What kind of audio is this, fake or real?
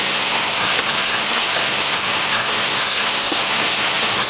fake